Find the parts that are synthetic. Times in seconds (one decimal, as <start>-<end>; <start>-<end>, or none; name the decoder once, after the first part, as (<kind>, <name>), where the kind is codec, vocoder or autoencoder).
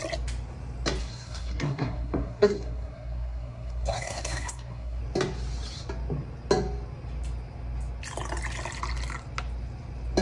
1.0-5.0 (codec, SNAC)